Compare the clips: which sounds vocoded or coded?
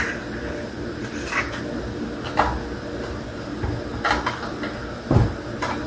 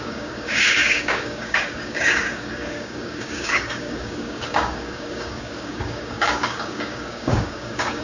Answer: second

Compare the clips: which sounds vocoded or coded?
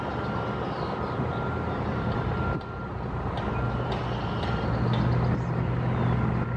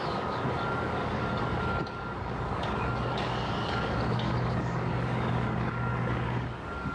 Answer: second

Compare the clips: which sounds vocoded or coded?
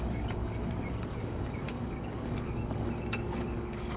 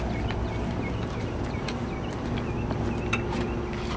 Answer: first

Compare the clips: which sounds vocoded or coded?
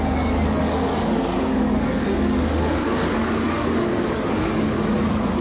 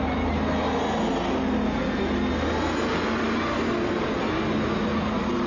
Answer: first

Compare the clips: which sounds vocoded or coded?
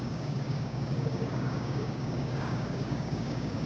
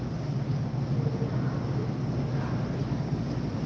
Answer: first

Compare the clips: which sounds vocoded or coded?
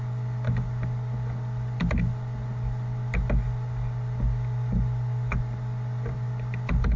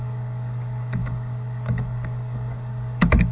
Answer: second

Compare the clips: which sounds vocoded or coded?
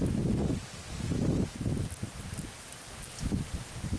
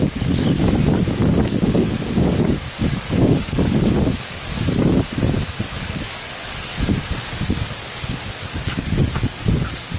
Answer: second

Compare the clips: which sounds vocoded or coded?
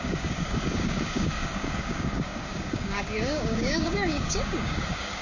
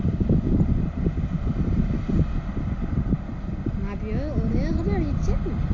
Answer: first